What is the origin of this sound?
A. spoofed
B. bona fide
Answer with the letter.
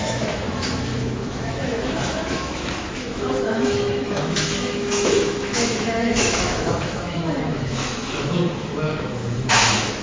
A